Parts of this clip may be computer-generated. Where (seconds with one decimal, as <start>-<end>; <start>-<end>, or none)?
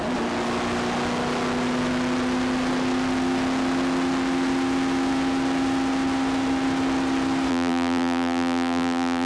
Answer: 7.5-9.3